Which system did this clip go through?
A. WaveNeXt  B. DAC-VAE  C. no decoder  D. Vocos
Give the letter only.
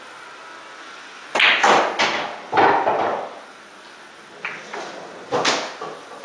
C